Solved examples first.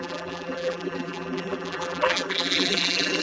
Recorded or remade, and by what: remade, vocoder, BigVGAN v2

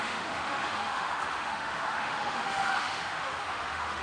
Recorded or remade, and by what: remade, autoencoder, DAC-VAE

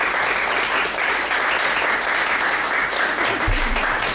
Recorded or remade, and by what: recorded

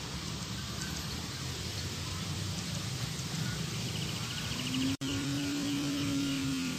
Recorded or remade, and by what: remade, vocoder, BigVGAN v2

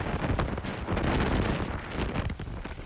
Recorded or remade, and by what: recorded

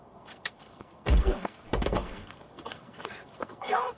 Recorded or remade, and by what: remade, codec, SNAC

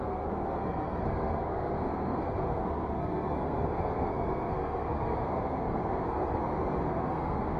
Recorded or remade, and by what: remade, codec, SNAC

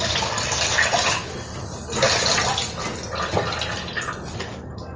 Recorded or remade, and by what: recorded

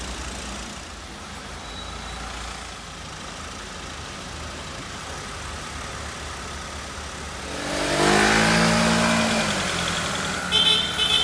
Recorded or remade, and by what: recorded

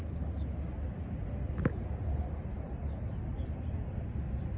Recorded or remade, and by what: recorded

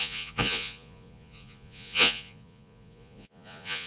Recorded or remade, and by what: remade, vocoder, Vocos